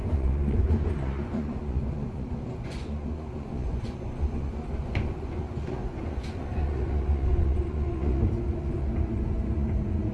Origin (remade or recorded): remade